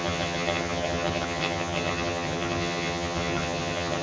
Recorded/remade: remade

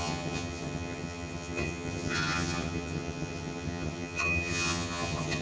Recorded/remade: remade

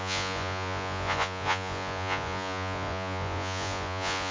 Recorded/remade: remade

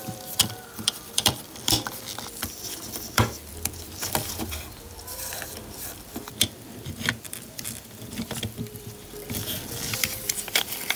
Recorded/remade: remade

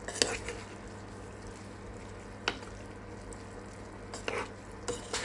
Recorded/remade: recorded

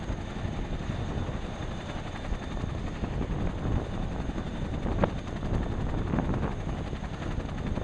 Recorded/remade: recorded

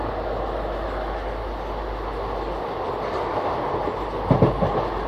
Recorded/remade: recorded